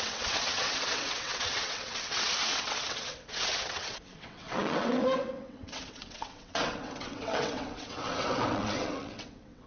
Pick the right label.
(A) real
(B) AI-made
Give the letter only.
B